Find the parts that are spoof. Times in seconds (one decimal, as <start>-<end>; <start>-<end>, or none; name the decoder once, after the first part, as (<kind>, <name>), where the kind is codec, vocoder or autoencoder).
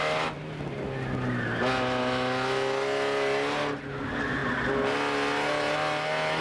none